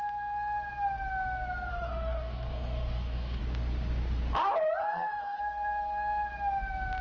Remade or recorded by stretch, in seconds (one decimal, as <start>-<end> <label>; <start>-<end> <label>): 0.0-1.7 recorded; 1.7-3.4 remade; 3.4-4.8 recorded; 4.8-5.4 remade; 5.4-7.0 recorded